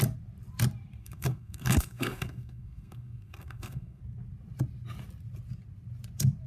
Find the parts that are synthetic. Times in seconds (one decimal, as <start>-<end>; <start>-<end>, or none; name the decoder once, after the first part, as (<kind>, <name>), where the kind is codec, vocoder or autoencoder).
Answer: 1.0-4.0 (codec, SNAC)